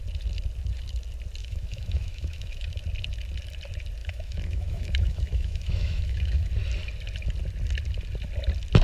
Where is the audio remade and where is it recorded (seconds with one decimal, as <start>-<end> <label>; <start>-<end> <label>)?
0.0-1.4 recorded; 1.4-2.7 remade; 2.7-4.0 recorded; 4.0-6.5 remade; 6.5-8.8 recorded